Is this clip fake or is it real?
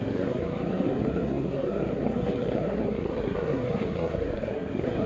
fake